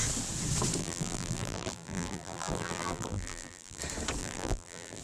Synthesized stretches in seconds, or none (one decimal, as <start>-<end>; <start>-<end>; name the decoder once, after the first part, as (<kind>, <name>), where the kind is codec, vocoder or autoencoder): 0.8-3.8 (vocoder, BigVGAN v2); 4.2-5.0

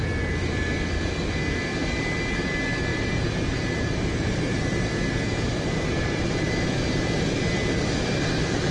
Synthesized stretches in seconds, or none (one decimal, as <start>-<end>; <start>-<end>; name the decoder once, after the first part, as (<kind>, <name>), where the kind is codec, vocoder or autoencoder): 2.9-6.5 (vocoder, BigVGAN v2); 7.6-8.2

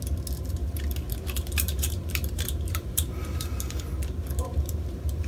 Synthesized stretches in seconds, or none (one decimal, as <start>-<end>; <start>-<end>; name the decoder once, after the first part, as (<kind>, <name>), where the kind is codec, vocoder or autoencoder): 0.6-3.8 (vocoder, BigVGAN v2); 4.5-5.3

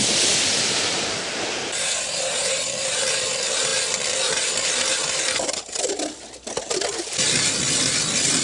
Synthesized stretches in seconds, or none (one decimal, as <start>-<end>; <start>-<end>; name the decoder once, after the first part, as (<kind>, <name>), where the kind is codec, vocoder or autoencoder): none

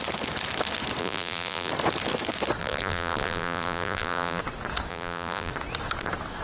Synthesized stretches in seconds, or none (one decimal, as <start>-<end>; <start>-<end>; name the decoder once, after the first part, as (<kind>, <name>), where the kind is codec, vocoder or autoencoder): 1.0-1.7 (vocoder, BigVGAN v2); 2.6-4.4; 4.9-5.5

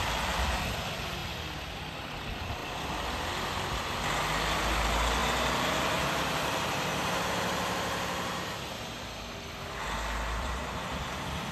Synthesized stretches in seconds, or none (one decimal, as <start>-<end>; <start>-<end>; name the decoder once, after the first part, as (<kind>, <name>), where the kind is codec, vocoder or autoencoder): 0.0-1.2 (vocoder, BigVGAN v2); 1.8-2.6; 3.3-5.2; 5.7-6.9; 9.8-11.5